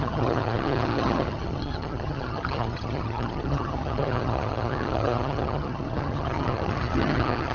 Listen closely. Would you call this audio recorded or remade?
remade